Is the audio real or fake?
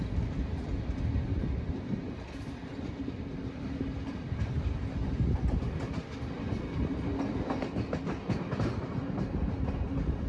real